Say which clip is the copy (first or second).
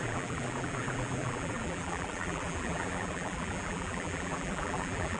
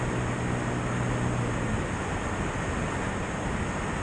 first